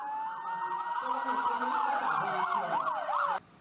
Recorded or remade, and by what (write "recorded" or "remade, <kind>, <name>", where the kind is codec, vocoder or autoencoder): recorded